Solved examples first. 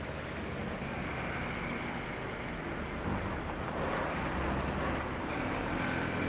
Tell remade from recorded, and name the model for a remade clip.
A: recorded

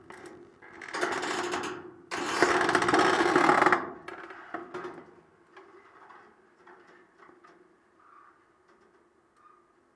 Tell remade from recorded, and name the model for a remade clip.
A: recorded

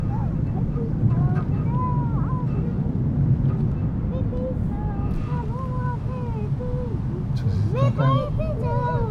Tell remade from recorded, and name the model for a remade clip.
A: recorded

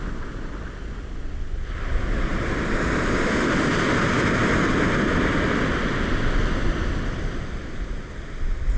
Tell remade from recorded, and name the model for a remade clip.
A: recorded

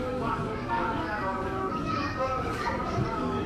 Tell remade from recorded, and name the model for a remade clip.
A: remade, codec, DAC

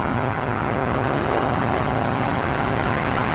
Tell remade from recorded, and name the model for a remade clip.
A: remade, vocoder, HiFi-GAN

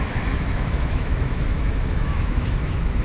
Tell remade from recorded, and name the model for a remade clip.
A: remade, autoencoder, DAC-VAE